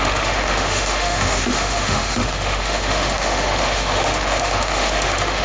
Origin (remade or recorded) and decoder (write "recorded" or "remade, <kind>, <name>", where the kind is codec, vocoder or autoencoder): remade, autoencoder, DAC-VAE